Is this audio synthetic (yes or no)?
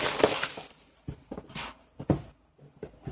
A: no